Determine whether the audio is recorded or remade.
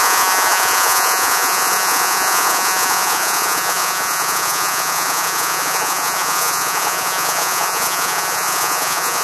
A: remade